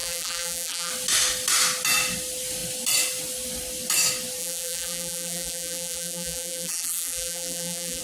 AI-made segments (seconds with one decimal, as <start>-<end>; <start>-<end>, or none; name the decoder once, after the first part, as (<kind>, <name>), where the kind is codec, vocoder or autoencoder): 0.0-0.9 (vocoder, BigVGAN v2); 4.4-8.0